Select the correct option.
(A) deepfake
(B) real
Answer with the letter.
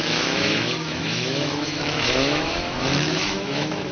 A